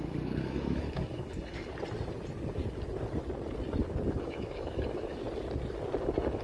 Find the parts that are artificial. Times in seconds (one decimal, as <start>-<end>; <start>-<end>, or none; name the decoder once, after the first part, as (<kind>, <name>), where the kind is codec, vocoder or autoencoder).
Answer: 0.0-1.7 (codec, DAC); 4.2-5.2; 6.0-6.4